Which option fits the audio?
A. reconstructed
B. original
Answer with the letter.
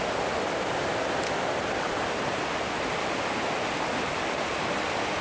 B